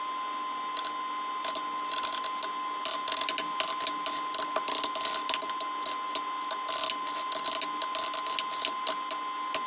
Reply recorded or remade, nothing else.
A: recorded